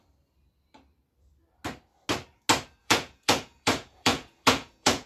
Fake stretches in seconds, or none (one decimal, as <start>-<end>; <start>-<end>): 2.8-5.1